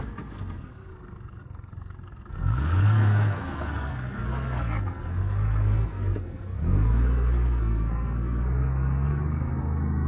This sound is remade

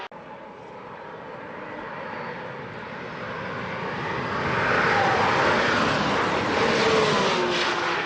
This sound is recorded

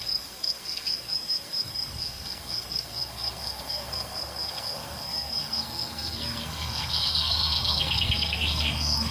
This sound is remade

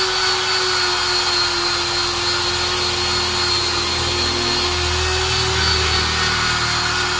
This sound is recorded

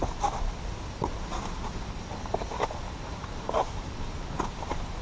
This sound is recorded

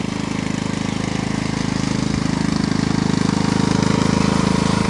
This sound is recorded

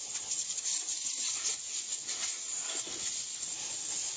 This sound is recorded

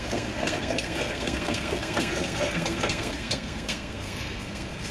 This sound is remade